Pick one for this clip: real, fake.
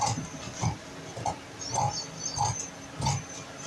real